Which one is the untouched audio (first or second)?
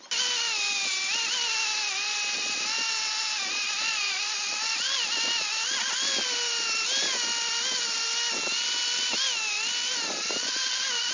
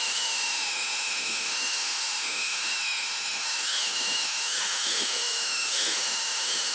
first